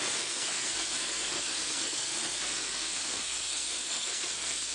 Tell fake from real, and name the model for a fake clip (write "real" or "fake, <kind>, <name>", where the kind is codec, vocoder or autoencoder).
fake, codec, SNAC